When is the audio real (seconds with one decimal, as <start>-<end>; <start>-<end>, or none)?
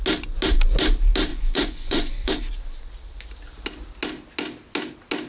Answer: 0.0-1.3; 2.3-5.3